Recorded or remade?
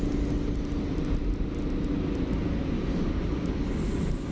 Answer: recorded